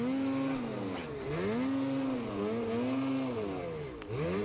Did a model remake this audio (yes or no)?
no